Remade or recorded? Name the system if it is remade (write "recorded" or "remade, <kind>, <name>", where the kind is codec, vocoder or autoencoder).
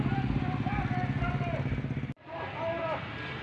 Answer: recorded